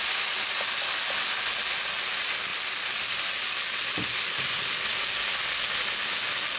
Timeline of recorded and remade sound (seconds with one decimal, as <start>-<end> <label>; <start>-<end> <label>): 0.0-6.6 recorded